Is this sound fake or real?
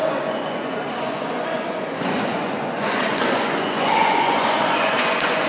fake